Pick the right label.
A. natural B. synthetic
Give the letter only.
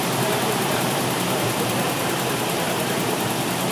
B